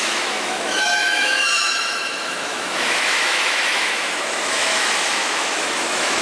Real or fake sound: fake